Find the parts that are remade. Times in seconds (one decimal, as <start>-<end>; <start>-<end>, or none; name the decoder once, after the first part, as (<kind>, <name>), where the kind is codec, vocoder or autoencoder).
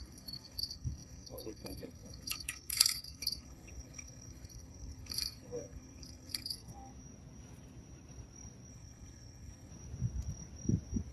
0.0-6.9 (codec, SNAC); 8.7-9.7